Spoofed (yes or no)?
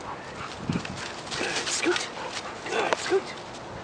no